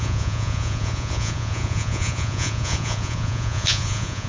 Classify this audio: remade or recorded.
remade